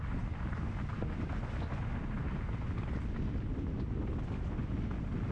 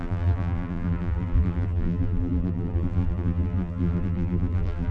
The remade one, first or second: second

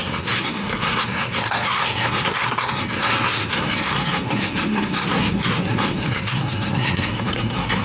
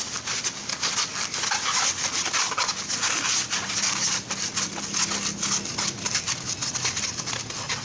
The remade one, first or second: first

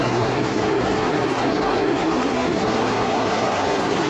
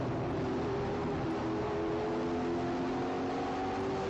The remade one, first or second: first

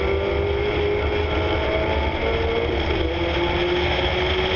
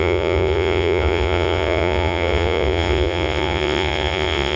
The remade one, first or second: second